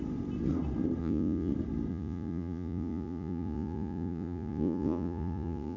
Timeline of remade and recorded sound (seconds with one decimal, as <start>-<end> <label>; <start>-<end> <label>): 0.0-1.0 recorded; 1.0-1.5 remade; 1.5-1.9 recorded; 1.9-5.8 remade